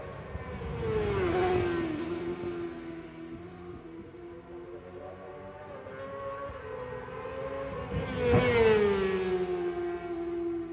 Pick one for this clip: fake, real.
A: real